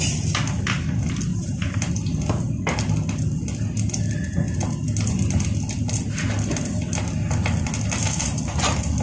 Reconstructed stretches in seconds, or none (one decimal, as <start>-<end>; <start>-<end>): 1.3-1.9; 8.0-8.6